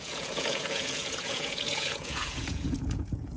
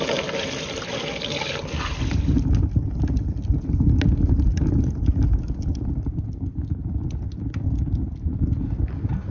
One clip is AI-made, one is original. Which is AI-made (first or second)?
first